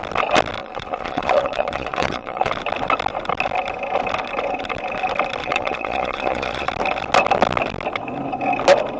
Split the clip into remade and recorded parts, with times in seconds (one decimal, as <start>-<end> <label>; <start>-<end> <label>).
0.0-0.6 recorded; 0.6-2.5 remade; 2.5-5.4 recorded; 5.4-6.7 remade; 6.7-9.0 recorded